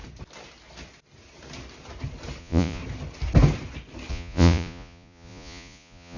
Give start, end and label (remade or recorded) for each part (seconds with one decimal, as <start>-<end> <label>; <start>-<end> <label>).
0.0-2.4 recorded; 2.4-2.8 remade; 2.8-4.1 recorded; 4.1-6.2 remade